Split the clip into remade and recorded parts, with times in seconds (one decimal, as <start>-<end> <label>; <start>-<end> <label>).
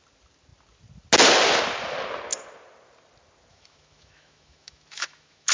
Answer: 0.0-3.5 recorded; 3.5-5.5 remade